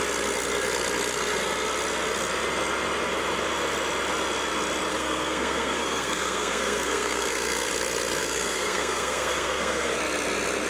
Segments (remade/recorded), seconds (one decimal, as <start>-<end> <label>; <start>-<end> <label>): 0.0-4.9 recorded; 4.9-7.7 remade; 7.7-8.2 recorded; 8.2-10.0 remade; 10.0-10.7 recorded

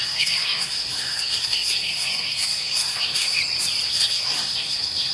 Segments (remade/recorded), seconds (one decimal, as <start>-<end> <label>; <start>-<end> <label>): 0.0-3.4 remade; 3.4-3.9 recorded; 3.9-5.1 remade